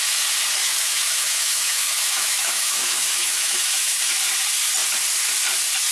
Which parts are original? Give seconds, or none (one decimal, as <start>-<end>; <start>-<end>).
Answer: 0.0-0.6; 4.1-5.9